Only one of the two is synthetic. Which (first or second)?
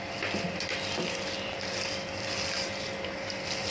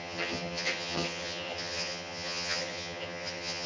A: second